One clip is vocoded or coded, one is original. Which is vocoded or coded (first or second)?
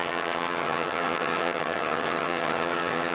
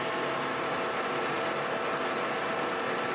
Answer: first